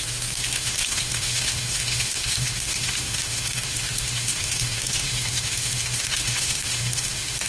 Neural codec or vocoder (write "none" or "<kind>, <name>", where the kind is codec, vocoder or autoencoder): autoencoder, DAC-VAE